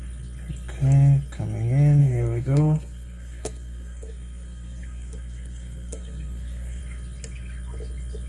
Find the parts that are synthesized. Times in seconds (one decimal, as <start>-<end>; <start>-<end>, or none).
2.0-6.8